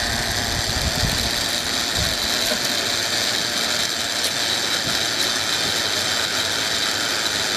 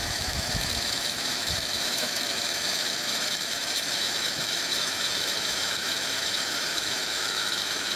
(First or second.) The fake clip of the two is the second